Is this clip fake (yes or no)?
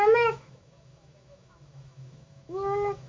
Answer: yes